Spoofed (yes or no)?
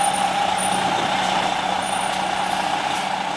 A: no